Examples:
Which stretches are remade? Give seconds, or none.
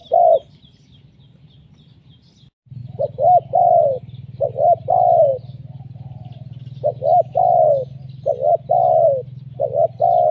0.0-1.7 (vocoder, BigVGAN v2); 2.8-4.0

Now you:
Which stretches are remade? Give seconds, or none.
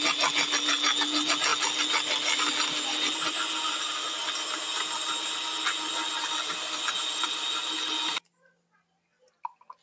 none